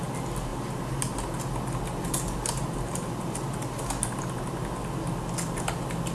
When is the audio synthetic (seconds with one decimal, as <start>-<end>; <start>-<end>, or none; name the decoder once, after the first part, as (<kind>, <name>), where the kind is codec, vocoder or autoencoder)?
0.0-6.1 (vocoder, BigVGAN v2)

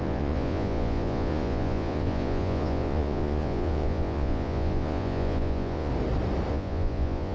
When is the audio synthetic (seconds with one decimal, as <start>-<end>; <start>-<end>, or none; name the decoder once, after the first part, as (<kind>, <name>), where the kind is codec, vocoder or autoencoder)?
0.0-5.9 (vocoder, Vocos); 6.5-7.3